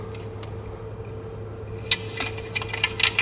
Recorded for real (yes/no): yes